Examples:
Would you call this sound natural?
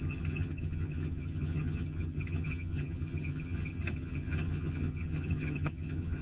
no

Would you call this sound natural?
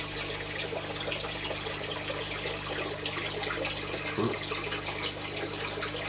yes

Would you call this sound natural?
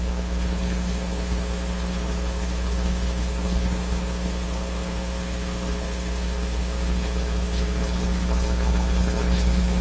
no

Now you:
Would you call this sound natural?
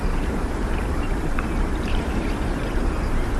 no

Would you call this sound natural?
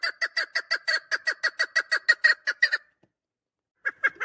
yes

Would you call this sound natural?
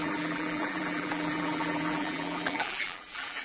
no